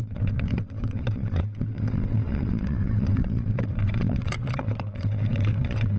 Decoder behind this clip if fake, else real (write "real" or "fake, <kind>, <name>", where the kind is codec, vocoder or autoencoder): fake, vocoder, WaveNeXt